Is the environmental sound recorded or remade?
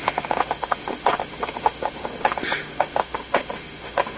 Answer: remade